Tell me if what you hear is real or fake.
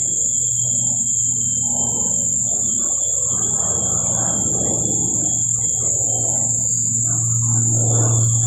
real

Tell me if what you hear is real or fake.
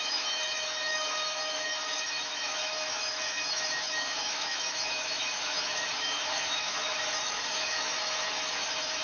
fake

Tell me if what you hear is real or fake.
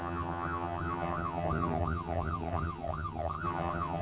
fake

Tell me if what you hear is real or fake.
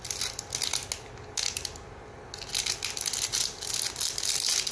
real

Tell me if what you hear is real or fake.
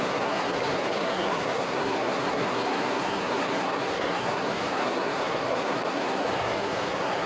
fake